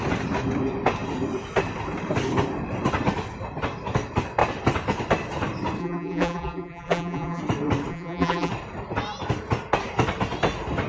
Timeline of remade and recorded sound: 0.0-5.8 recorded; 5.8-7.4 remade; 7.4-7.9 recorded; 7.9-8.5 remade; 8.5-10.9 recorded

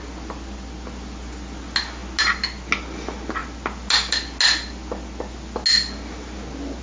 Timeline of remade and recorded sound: 0.0-6.8 recorded